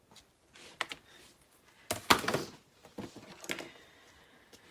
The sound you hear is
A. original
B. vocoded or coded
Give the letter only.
A